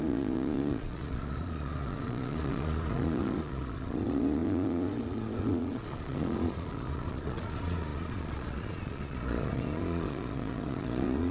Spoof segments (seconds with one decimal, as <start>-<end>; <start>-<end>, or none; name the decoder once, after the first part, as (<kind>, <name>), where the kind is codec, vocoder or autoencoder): 0.0-11.3 (vocoder, Vocos)